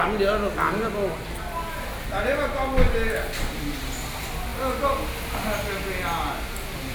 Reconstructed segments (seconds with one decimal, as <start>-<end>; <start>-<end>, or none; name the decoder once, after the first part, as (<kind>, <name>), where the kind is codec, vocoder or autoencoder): none